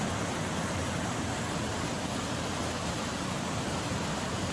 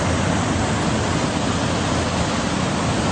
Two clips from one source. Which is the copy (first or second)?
first